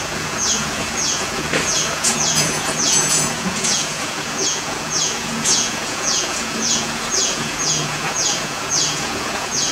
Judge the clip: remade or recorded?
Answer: remade